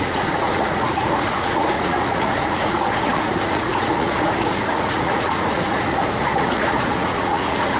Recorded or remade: remade